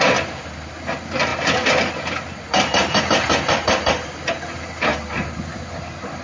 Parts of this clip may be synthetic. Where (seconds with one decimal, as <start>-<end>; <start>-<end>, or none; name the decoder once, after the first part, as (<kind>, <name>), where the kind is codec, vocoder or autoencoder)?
none